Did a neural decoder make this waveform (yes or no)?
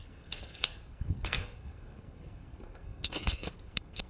yes